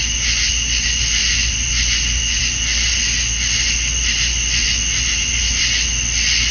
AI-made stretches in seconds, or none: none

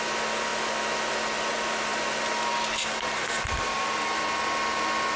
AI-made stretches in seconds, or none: none

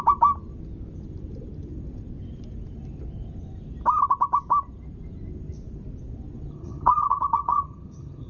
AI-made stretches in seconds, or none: 6.5-8.3

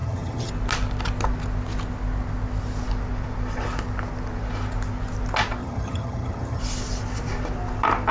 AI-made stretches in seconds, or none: 0.0-0.5; 5.6-6.6

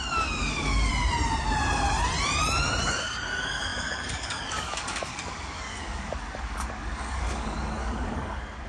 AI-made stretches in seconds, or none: 0.0-0.9; 2.8-8.7

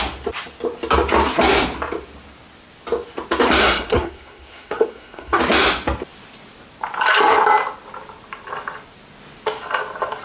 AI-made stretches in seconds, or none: 3.6-5.4

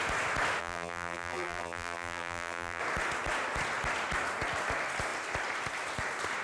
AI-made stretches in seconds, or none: 0.6-2.8